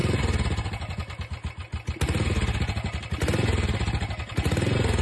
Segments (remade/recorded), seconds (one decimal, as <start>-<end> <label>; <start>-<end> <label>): 0.0-5.0 recorded